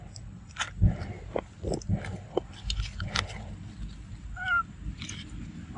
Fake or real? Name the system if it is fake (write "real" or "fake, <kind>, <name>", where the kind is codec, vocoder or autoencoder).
real